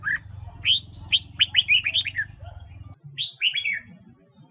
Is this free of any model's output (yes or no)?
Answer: yes